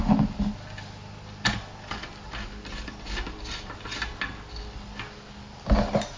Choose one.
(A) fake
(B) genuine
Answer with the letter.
B